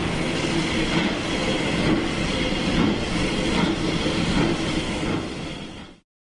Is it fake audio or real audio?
real